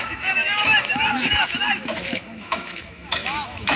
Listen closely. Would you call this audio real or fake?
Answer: fake